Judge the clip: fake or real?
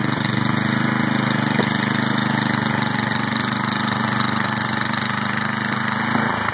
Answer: real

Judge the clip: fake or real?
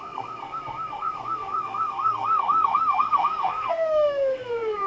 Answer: fake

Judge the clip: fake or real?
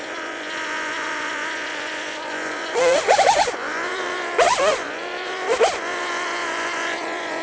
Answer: fake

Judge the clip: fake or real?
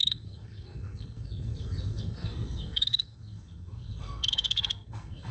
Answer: fake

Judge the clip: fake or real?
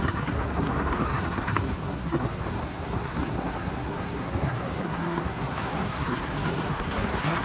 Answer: fake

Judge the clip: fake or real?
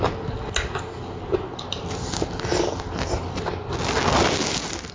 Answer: real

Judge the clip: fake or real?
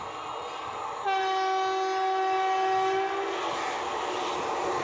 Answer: real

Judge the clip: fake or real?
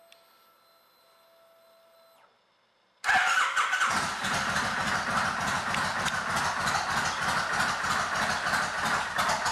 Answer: real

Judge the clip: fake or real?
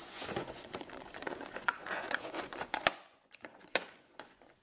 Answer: fake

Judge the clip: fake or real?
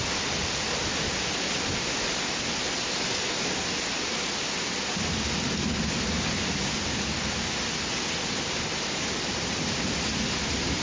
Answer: real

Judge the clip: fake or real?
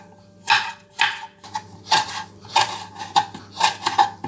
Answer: real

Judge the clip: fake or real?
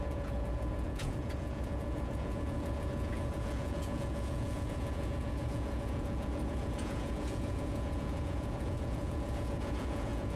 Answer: fake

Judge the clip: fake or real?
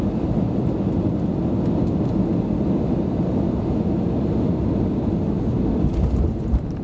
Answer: real